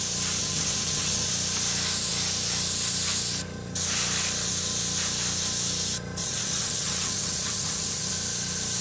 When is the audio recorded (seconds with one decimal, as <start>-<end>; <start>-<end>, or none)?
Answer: 0.0-0.4; 1.3-6.2; 8.1-8.8